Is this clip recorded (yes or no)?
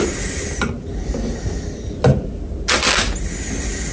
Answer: yes